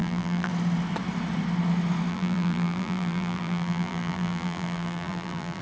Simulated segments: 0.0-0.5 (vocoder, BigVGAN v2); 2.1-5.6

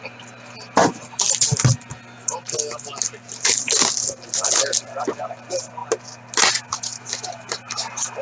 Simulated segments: none